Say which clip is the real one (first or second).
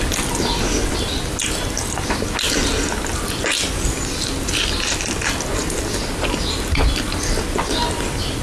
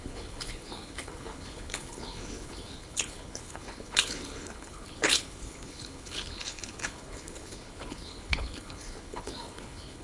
first